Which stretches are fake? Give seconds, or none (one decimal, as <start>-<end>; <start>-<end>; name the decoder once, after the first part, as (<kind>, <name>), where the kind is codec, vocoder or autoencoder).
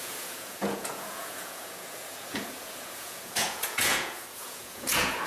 0.0-5.3 (vocoder, Vocos)